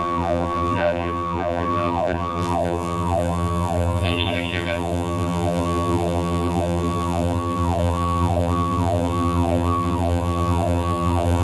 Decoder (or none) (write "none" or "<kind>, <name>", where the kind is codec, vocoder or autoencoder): vocoder, BigVGAN v2